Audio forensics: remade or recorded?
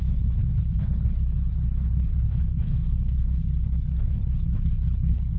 remade